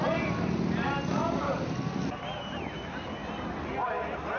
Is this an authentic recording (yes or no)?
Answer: yes